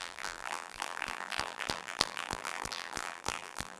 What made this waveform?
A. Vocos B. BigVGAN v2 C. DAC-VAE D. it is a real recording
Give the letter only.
B